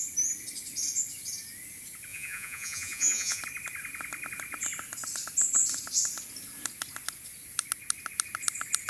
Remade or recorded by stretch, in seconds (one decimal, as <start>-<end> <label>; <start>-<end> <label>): 0.0-2.1 recorded; 2.1-3.4 remade; 3.4-8.9 recorded